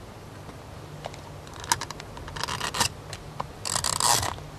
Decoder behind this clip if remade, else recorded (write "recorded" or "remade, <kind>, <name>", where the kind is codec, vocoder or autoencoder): recorded